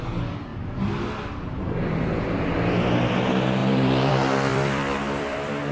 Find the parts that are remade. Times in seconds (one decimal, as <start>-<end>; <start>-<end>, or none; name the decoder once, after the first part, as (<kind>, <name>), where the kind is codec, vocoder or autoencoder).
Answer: 3.6-4.1 (vocoder, BigVGAN v2); 4.5-5.7